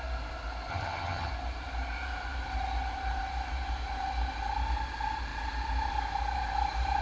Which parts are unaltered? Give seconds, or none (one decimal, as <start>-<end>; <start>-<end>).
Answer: 0.0-0.7; 1.3-7.0

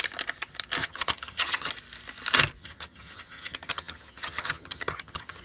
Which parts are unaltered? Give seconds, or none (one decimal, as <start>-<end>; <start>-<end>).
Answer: 0.0-0.8; 1.7-2.6